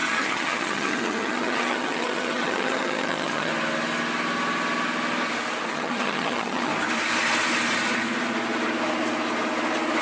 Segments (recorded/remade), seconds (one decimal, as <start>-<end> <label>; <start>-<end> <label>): 0.0-3.5 remade; 3.5-5.7 recorded; 5.7-6.7 remade; 6.7-10.0 recorded